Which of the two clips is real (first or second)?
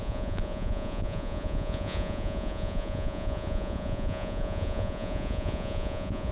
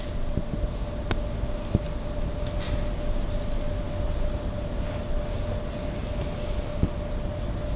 second